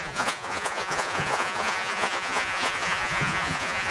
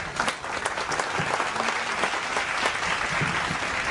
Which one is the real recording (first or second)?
second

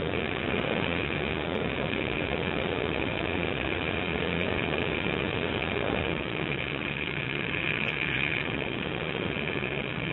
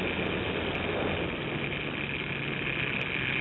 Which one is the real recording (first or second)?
second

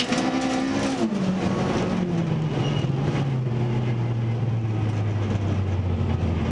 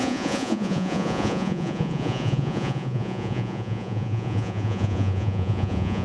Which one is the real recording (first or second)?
first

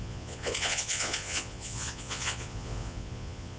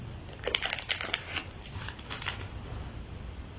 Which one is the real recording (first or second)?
second